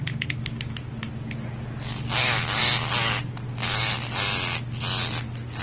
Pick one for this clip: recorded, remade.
recorded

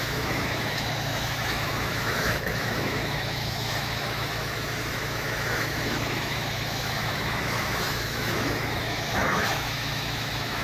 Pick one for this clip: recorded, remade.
remade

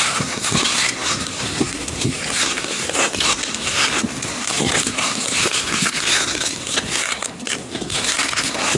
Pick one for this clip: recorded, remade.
remade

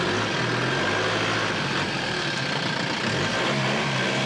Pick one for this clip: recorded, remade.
recorded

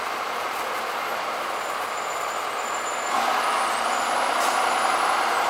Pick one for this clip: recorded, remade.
recorded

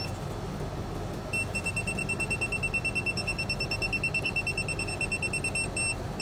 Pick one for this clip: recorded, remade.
recorded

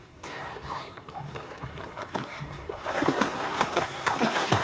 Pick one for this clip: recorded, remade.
remade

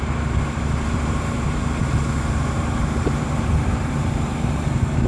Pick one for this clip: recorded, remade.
remade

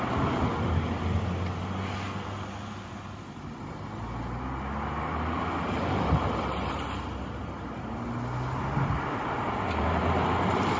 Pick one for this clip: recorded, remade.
recorded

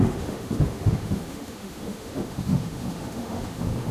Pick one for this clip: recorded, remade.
remade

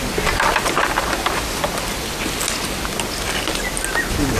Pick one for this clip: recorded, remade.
recorded